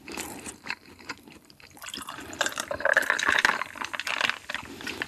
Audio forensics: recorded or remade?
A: remade